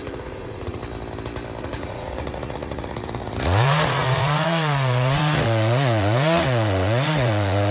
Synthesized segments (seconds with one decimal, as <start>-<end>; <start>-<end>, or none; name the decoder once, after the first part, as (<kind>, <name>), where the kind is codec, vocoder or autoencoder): 0.0-0.8 (vocoder, Vocos); 1.6-7.7